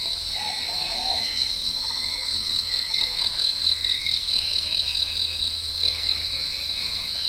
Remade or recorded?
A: remade